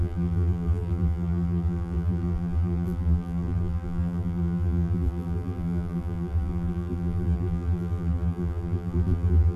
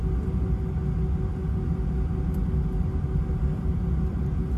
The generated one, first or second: first